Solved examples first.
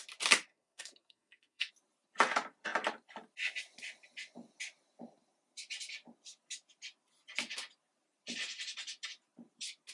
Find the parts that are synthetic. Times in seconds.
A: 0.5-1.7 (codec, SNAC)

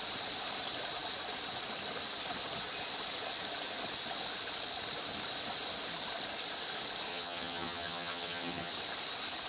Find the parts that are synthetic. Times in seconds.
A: 7.1-8.7 (vocoder, HiFi-GAN)